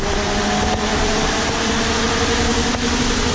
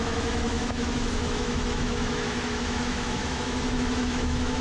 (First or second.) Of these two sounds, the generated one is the second